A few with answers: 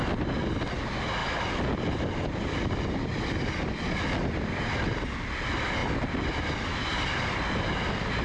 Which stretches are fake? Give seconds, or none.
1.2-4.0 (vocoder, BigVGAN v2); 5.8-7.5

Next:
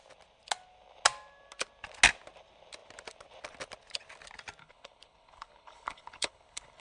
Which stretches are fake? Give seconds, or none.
4.6-6.8 (codec, HILCodec)

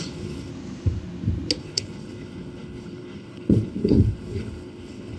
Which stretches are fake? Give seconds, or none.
0.0-0.5 (codec, HILCodec); 1.6-5.2